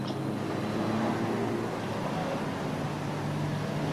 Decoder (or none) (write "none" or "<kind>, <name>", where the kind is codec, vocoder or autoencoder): none